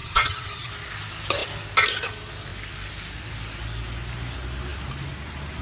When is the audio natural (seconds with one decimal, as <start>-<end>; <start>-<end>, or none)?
0.7-5.6